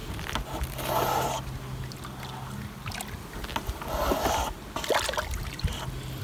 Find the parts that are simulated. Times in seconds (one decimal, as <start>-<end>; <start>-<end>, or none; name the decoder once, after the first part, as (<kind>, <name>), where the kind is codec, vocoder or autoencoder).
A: none